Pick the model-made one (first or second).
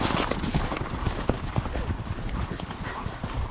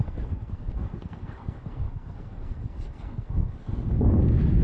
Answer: second